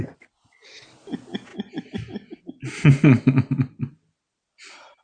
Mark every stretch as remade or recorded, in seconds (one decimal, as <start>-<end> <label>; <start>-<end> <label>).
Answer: 0.0-5.0 recorded